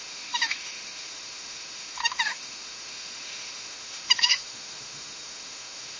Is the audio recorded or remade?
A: remade